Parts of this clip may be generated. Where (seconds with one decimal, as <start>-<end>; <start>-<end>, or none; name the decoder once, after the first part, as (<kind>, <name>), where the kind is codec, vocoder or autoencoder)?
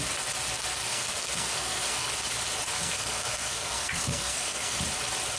0.9-2.1 (codec, SNAC); 2.7-4.8